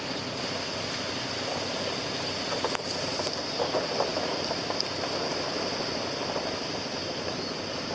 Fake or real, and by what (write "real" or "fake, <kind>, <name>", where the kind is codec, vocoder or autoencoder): real